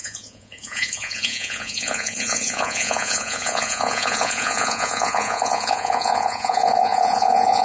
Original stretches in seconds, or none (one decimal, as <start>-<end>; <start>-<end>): none